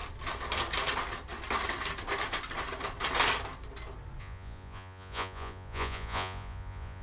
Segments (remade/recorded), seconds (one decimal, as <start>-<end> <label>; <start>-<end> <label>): 0.0-4.2 recorded; 4.2-7.0 remade